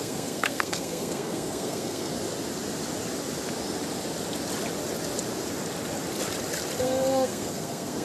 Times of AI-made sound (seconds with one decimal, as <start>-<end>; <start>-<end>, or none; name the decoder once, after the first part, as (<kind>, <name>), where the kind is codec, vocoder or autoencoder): 0.0-2.1 (codec, SNAC); 6.8-8.0